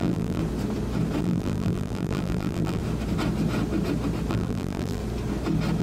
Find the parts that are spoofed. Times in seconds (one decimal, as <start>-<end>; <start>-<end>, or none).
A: 0.0-0.4; 1.2-2.8; 4.3-5.0